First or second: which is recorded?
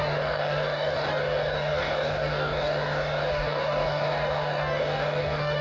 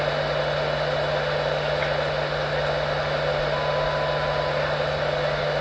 second